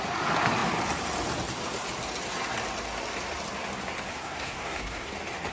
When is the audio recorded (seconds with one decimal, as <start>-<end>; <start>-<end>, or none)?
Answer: 0.0-4.1; 5.1-5.5